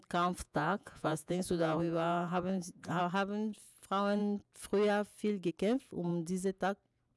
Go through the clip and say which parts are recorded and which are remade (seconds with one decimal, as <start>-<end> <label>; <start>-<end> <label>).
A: 0.0-0.4 recorded; 0.4-3.0 remade; 3.0-7.2 recorded